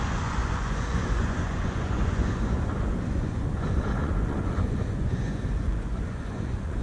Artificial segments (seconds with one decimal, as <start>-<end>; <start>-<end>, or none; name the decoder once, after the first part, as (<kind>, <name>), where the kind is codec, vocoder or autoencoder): 0.0-6.8 (vocoder, Vocos)